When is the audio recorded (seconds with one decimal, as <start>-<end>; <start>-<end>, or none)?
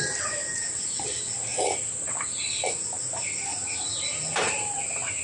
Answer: 0.0-5.2